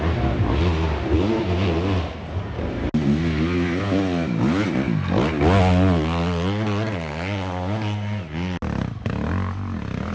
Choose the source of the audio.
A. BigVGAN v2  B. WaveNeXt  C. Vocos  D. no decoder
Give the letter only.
D